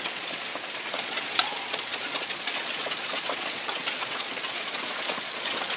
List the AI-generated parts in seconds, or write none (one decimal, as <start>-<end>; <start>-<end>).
0.0-0.5; 1.0-5.8